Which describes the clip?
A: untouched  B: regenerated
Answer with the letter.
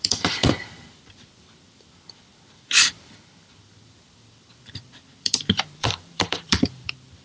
B